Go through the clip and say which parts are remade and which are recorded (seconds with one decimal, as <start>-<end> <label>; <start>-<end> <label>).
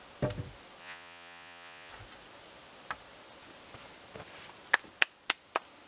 0.0-0.8 recorded; 0.8-1.9 remade; 1.9-5.9 recorded